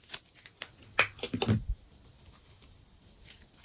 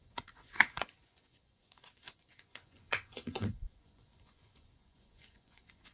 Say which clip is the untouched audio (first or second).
first